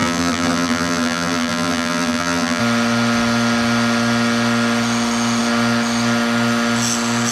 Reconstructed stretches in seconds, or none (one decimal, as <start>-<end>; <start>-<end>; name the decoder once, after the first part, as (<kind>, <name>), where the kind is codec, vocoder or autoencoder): 0.0-2.6 (vocoder, BigVGAN v2)